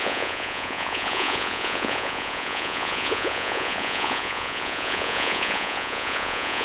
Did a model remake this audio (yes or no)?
yes